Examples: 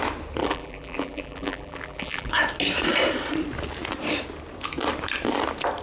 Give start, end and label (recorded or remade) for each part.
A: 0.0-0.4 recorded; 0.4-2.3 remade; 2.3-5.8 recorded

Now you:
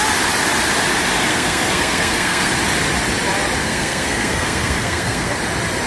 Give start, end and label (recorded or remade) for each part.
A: 0.0-1.3 recorded; 1.3-2.5 remade; 2.5-3.6 recorded; 3.6-5.4 remade; 5.4-5.9 recorded

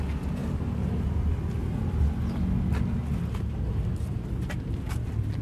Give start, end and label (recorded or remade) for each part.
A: 0.0-5.4 recorded

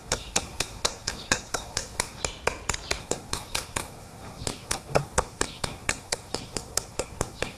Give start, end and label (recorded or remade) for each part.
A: 0.0-2.2 remade; 2.2-3.0 recorded; 3.0-7.6 remade

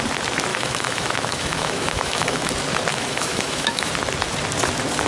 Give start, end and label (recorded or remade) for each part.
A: 0.0-0.5 recorded; 0.5-2.5 remade; 2.5-2.9 recorded; 2.9-3.9 remade; 3.9-5.1 recorded

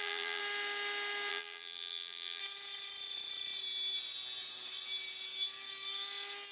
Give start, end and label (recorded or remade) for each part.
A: 0.0-0.4 remade; 0.4-1.3 recorded; 1.3-2.4 remade; 2.4-6.5 recorded